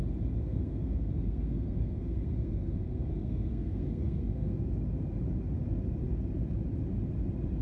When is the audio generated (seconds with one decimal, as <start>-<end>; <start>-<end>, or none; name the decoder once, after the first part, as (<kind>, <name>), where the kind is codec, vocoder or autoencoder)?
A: 0.4-4.7 (codec, SNAC)